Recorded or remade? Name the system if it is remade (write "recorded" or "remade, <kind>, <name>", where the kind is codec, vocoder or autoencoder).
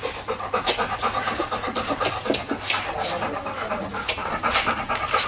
recorded